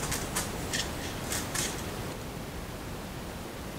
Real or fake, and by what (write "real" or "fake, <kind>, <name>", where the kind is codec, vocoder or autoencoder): real